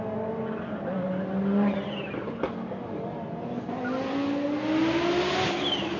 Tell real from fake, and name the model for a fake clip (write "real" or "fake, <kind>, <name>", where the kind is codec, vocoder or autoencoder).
real